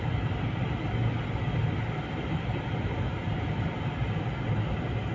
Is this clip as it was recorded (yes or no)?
yes